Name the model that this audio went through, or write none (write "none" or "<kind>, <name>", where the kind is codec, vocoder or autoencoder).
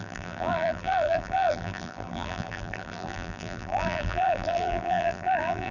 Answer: vocoder, BigVGAN v2